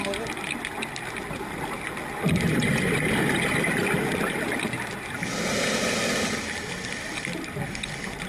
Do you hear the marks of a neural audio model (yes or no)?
no